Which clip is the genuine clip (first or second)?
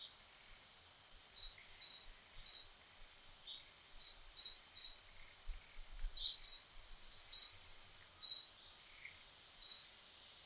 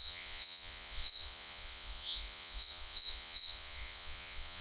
first